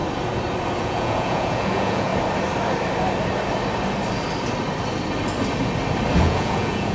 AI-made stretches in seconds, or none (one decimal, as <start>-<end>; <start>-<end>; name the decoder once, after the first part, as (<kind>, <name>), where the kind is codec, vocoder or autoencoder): 0.8-2.1 (vocoder, Vocos); 6.2-6.9